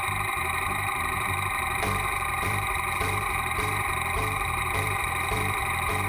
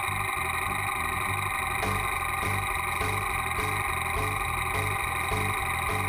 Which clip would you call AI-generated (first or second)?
first